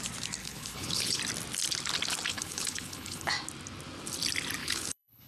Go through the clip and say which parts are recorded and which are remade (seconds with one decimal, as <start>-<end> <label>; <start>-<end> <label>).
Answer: 0.0-0.4 recorded; 0.4-1.2 remade; 1.2-2.3 recorded; 2.3-3.3 remade; 3.3-4.6 recorded; 4.6-5.3 remade